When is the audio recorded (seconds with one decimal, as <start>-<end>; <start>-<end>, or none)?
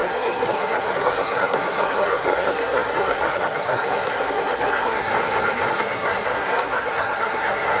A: 5.1-5.7